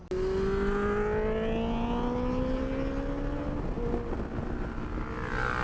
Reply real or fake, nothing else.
real